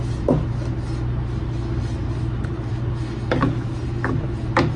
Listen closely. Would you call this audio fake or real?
real